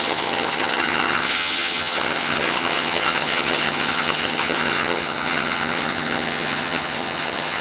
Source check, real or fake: fake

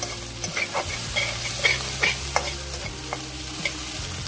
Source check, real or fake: real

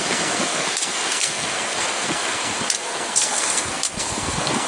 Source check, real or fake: fake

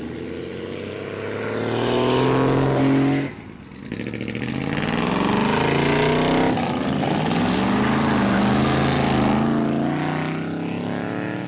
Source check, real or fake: real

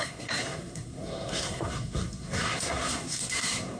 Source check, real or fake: fake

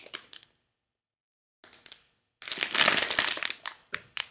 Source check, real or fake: real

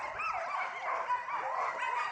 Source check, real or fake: real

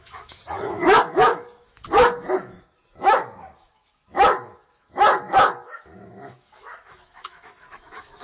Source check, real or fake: fake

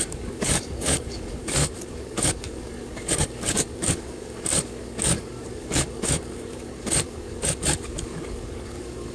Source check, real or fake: fake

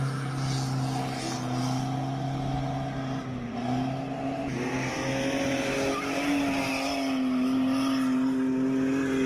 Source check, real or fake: real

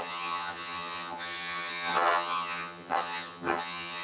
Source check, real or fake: fake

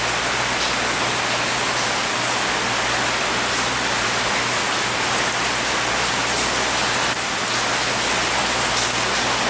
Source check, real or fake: real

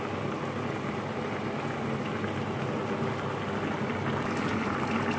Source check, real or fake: real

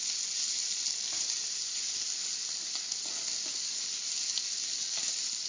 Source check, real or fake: real